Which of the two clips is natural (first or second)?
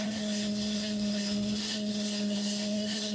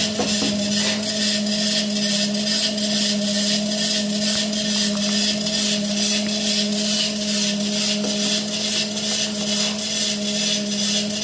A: second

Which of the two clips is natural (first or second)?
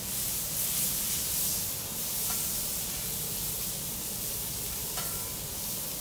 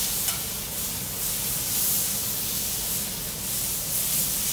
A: second